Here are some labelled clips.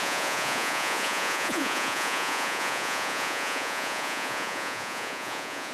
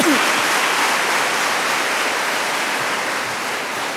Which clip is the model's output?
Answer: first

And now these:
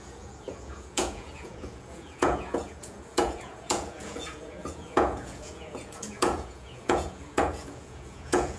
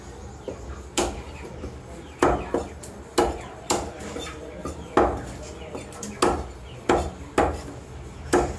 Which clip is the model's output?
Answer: first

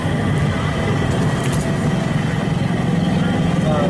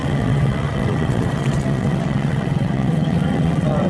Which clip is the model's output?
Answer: second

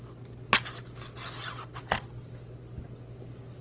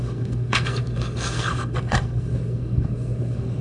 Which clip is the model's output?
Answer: second